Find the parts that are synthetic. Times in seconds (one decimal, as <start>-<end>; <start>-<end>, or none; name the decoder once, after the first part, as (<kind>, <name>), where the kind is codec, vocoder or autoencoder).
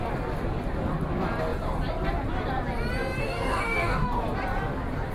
3.2-4.2 (codec, DAC)